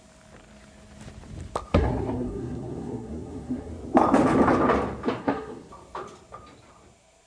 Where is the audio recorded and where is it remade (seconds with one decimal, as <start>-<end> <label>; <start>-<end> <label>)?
0.0-1.7 recorded; 1.7-3.7 remade; 3.7-5.2 recorded; 5.2-5.7 remade; 5.7-7.3 recorded

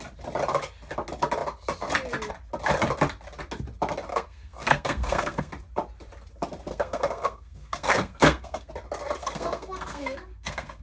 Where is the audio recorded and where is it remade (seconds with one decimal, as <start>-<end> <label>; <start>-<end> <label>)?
0.0-4.1 recorded; 4.1-5.5 remade; 5.5-6.7 recorded; 6.7-8.7 remade; 8.7-9.2 recorded; 9.2-10.8 remade

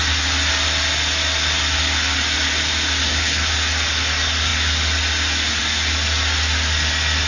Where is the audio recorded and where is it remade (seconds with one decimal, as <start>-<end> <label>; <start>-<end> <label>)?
0.0-3.0 recorded; 3.0-3.5 remade; 3.5-7.3 recorded

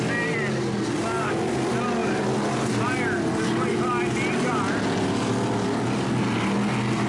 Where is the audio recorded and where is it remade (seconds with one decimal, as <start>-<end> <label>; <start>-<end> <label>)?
0.0-7.1 recorded

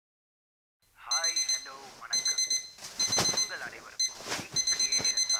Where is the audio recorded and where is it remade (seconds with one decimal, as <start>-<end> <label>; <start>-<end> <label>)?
0.0-5.4 recorded

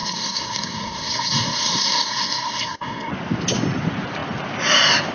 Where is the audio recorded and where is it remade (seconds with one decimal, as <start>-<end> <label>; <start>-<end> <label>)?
0.0-3.1 remade; 3.1-5.1 recorded

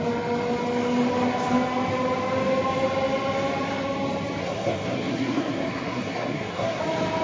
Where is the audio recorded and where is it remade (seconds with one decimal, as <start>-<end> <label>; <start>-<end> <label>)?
0.0-4.4 recorded; 4.4-6.8 remade; 6.8-7.2 recorded

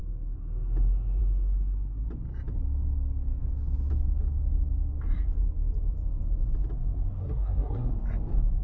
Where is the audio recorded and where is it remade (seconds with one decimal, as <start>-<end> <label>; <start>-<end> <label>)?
0.0-7.2 recorded; 7.2-7.9 remade; 7.9-8.6 recorded